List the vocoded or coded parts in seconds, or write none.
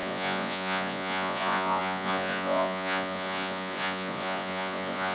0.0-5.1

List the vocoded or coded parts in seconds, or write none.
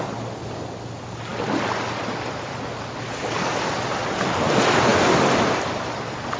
none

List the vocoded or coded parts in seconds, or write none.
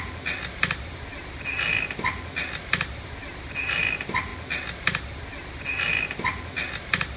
0.0-4.3; 5.2-7.2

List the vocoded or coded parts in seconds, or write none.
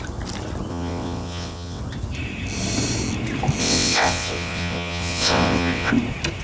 0.7-1.8; 3.6-5.9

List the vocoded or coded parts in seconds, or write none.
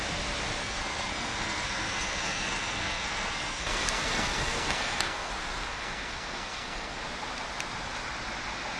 0.6-5.3; 5.7-7.0